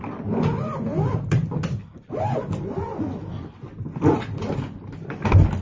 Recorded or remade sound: recorded